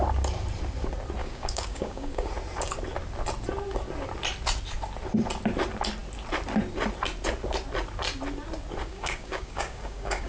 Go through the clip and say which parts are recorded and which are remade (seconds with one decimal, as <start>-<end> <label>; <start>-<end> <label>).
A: 0.0-1.2 recorded; 1.2-2.3 remade; 2.3-8.8 recorded; 8.8-10.3 remade